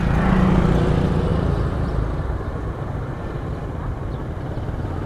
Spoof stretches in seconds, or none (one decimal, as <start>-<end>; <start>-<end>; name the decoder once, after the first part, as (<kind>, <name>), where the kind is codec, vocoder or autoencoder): 1.3-4.4 (vocoder, BigVGAN v2)